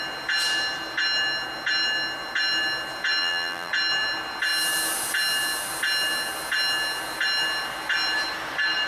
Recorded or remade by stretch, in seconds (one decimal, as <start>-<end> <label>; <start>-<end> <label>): 0.0-3.2 recorded; 3.2-3.7 remade; 3.7-8.9 recorded